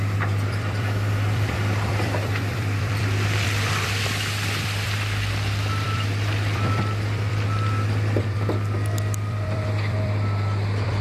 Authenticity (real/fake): fake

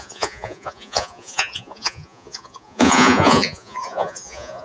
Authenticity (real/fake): fake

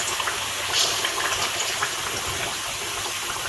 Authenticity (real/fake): real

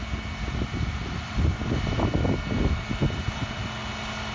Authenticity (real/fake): real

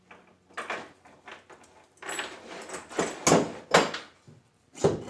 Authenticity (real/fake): real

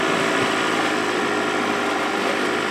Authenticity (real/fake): real